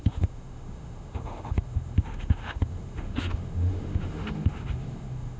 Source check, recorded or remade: remade